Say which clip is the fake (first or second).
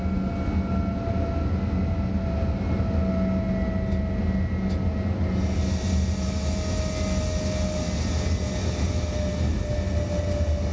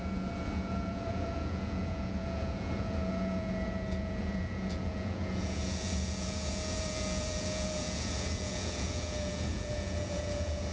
second